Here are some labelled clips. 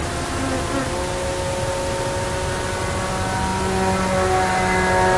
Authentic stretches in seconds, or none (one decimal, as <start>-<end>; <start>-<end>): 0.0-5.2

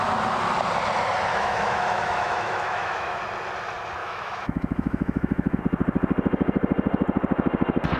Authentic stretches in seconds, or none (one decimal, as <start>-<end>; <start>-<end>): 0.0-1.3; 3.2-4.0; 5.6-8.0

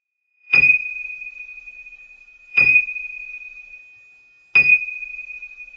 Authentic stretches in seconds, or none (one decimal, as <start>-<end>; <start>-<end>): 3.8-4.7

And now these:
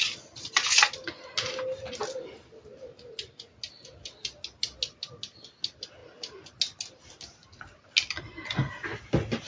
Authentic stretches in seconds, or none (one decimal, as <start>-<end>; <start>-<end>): 0.0-9.5

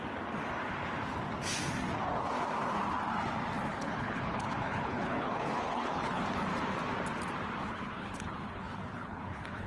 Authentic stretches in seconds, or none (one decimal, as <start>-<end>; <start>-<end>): 0.0-3.7; 6.2-7.6